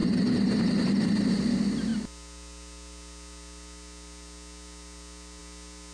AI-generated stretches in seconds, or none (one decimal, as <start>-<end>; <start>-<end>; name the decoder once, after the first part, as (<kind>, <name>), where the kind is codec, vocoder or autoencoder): 0.0-1.0 (vocoder, BigVGAN v2)